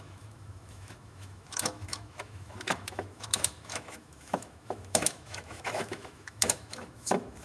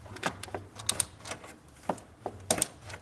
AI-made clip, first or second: first